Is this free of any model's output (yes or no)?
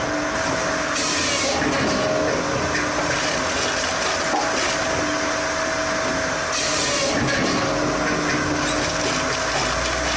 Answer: yes